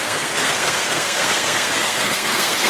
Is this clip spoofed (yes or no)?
yes